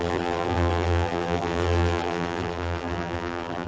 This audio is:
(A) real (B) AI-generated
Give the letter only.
B